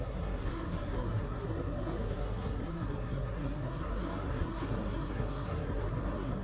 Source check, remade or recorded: remade